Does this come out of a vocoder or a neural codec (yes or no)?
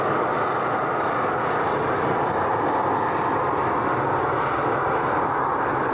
no